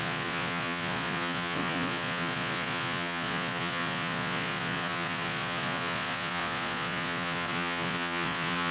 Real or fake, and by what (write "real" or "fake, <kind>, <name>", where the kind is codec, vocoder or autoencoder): fake, vocoder, Vocos